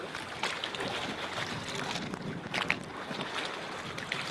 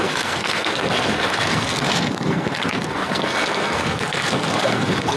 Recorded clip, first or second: first